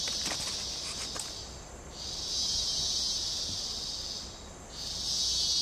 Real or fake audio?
real